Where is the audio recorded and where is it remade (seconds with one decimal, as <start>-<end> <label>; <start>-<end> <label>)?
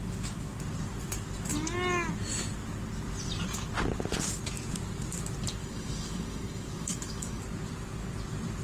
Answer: 0.0-5.6 recorded; 5.6-7.4 remade; 7.4-8.6 recorded